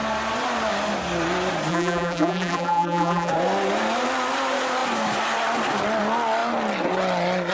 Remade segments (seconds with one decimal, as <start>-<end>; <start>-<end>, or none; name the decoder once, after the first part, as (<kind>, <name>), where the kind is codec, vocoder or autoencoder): 1.7-3.3 (vocoder, BigVGAN v2)

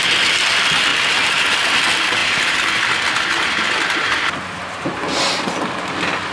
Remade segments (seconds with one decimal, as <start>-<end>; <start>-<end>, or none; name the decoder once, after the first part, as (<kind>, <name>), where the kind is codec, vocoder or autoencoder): 2.2-6.3 (vocoder, BigVGAN v2)

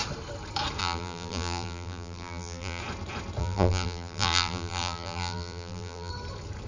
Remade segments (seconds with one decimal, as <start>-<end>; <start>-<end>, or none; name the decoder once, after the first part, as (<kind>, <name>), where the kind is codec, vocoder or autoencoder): 0.8-2.8 (vocoder, BigVGAN v2); 3.4-6.1